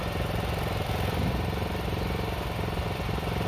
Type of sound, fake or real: fake